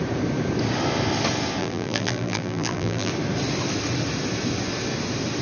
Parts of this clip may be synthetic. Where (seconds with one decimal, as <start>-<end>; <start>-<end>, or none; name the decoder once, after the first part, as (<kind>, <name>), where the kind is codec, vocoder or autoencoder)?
1.6-3.1 (vocoder, BigVGAN v2)